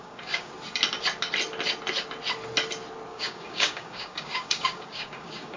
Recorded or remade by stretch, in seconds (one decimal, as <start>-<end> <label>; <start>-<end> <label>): 0.0-0.5 remade; 0.5-3.1 recorded; 3.1-5.6 remade